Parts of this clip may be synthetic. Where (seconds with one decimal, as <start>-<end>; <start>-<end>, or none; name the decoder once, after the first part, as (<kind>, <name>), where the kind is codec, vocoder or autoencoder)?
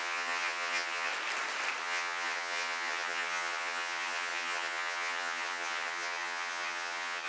0.0-1.1 (vocoder, HiFi-GAN); 1.8-7.3